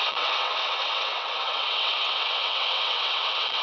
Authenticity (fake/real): fake